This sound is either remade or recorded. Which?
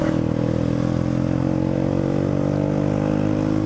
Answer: recorded